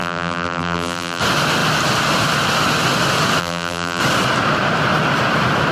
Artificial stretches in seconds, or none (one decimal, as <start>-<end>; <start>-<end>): 0.0-1.2; 3.4-4.0